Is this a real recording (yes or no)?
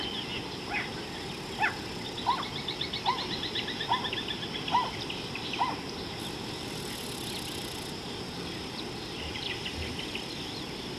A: no